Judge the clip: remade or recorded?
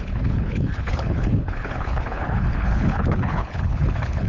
remade